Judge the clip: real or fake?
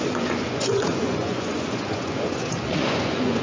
fake